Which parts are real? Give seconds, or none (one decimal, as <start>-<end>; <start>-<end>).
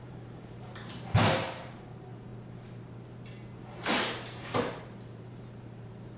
2.3-3.6